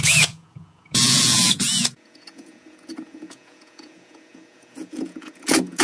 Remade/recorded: remade